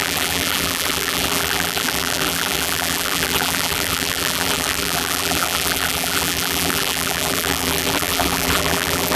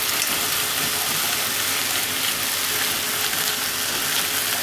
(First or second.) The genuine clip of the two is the second